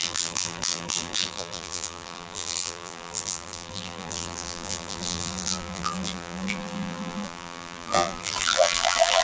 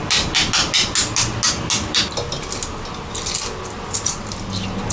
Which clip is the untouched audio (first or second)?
second